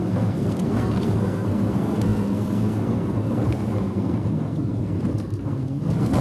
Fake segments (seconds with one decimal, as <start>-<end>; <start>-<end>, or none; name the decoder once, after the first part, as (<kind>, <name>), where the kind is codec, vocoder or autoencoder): 0.0-6.2 (codec, SNAC)